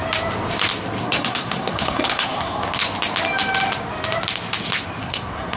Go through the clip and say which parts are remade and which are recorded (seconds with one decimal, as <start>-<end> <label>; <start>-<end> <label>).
0.0-1.0 recorded; 1.0-2.6 remade; 2.6-5.0 recorded; 5.0-5.6 remade